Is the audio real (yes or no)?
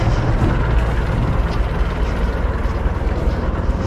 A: yes